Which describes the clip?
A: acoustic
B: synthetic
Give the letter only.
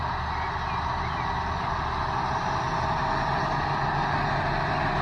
A